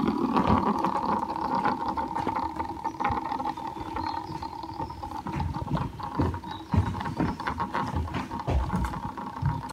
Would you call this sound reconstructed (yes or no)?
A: no